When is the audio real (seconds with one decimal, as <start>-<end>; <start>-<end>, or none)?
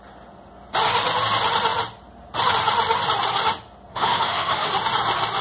0.0-3.9; 4.7-5.4